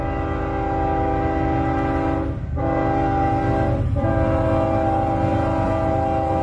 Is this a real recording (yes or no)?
yes